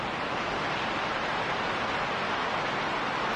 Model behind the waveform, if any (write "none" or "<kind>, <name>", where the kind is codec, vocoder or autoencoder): none